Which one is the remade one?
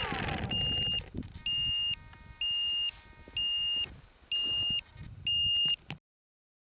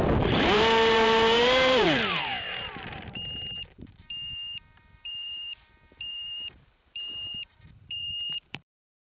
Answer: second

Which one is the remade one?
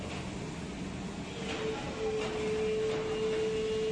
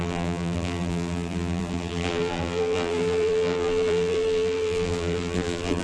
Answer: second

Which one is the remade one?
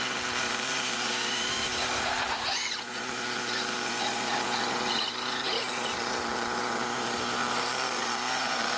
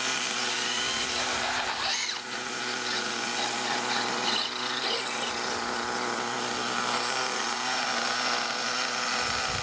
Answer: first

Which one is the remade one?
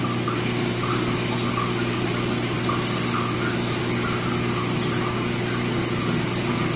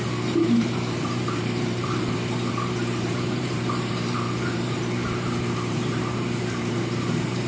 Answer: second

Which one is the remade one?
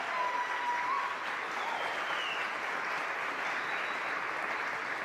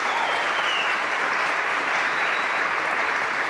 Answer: second